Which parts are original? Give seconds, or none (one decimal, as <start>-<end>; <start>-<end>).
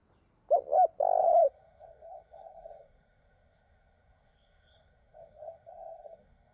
0.0-1.2